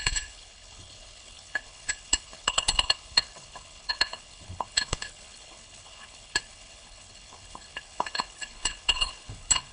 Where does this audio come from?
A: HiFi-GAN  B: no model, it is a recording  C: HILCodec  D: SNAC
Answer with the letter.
C